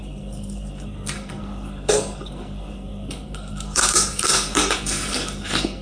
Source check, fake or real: fake